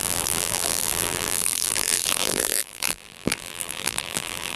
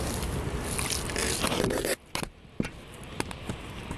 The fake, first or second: first